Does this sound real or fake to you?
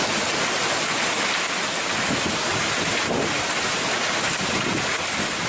real